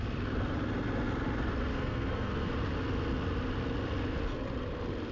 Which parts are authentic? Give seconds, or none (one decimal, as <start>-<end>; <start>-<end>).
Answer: 0.0-1.7; 2.5-5.1